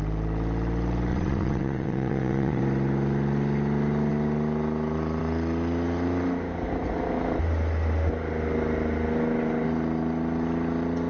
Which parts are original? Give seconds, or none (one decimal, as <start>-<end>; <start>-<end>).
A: 0.0-1.1; 2.6-11.1